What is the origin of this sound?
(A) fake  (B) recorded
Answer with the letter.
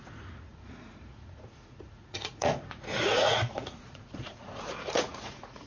A